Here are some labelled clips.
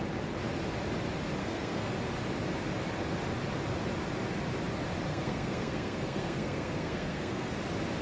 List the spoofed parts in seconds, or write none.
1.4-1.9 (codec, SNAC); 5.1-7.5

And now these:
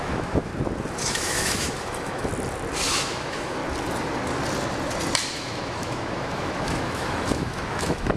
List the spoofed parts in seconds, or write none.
0.0-0.5 (autoencoder, DAC-VAE); 1.1-2.3; 2.9-3.6; 5.3-8.2

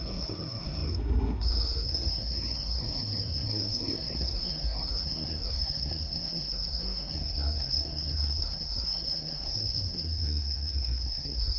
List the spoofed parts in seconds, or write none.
0.0-11.6 (codec, SNAC)

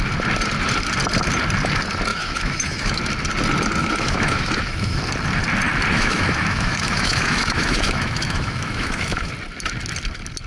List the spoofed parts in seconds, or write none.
2.1-3.0 (autoencoder, DAC-VAE); 3.8-5.0; 5.9-9.3